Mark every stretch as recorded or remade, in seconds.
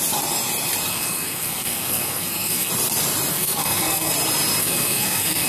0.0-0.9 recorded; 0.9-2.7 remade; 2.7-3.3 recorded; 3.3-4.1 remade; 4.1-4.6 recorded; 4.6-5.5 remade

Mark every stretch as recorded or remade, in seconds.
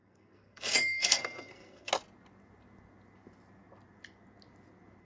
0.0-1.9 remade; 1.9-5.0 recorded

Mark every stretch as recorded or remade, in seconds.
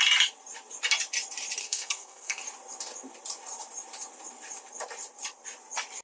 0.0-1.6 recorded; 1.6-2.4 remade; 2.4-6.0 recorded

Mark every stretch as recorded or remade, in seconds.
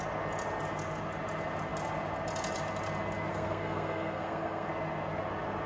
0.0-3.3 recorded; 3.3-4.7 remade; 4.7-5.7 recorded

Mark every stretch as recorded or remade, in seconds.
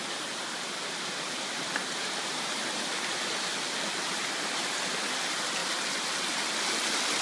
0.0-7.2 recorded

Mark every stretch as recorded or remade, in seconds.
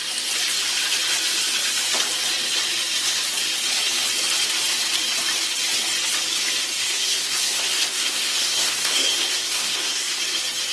0.0-6.8 recorded; 6.8-10.2 remade; 10.2-10.7 recorded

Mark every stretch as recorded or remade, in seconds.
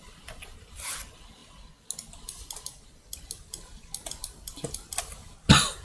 0.0-5.8 recorded